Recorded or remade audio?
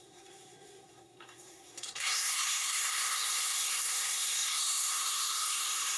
remade